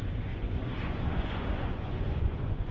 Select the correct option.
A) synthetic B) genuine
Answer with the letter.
A